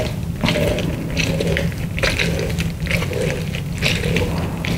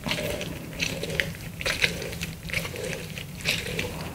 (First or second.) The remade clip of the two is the second